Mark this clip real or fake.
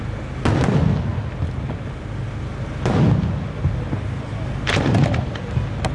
real